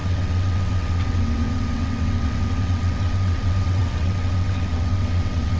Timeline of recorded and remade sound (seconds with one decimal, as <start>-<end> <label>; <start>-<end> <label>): 0.0-5.6 remade